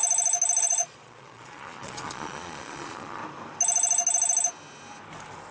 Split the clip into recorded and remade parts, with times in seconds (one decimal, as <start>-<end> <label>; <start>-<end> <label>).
0.0-0.6 recorded; 0.6-3.2 remade; 3.2-5.5 recorded